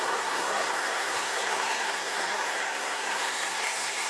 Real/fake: fake